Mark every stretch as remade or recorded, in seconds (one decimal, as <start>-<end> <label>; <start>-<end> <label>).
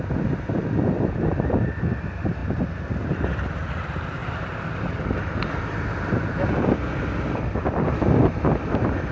0.0-9.1 remade